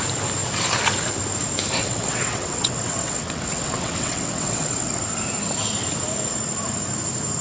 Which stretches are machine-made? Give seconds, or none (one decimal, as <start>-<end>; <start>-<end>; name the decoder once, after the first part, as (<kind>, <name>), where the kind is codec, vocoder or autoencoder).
1.8-5.0 (vocoder, WaveNeXt)